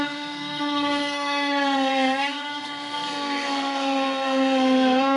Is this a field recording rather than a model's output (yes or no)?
no